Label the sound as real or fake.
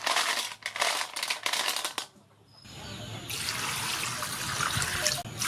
real